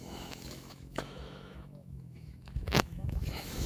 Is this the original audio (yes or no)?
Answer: no